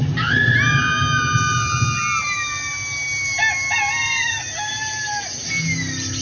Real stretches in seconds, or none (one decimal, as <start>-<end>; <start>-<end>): 0.0-6.2